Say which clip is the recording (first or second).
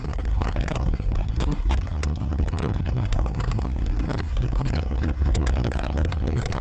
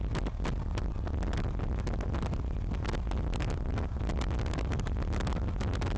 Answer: second